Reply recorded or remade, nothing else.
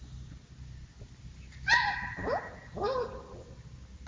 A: recorded